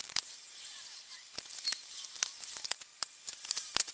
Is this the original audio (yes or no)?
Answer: yes